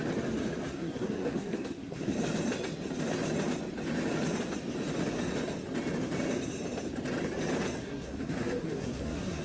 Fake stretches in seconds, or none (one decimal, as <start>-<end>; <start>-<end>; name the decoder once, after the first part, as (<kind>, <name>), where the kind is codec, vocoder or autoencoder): 0.7-2.1 (codec, SNAC); 7.8-9.4